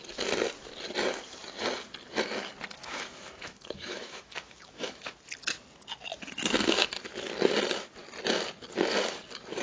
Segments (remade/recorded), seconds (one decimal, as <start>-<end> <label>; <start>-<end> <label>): 0.0-2.8 recorded; 2.8-5.1 remade; 5.1-9.6 recorded